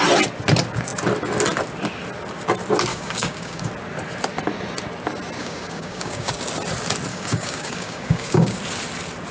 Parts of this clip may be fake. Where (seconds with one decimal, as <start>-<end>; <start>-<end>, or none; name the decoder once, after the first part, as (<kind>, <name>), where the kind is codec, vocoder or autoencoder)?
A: 2.9-3.7 (codec, DAC); 5.4-6.3; 7.1-8.6